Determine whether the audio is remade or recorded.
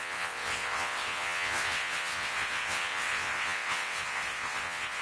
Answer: remade